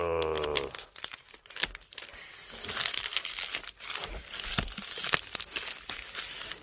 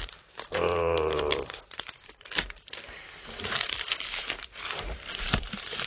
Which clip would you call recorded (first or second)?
first